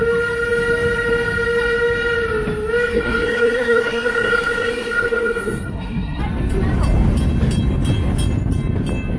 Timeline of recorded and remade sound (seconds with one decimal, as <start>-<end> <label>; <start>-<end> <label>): 0.0-2.9 recorded; 2.9-6.2 remade; 6.2-9.2 recorded